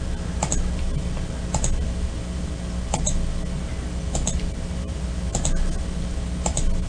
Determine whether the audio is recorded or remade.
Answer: recorded